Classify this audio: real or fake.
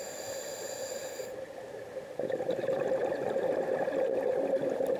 real